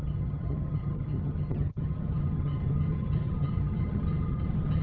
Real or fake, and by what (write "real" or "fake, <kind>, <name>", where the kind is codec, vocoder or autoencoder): fake, vocoder, HiFi-GAN